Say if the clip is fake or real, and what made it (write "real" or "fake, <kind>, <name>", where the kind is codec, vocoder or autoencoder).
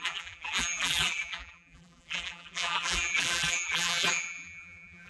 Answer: fake, vocoder, BigVGAN v2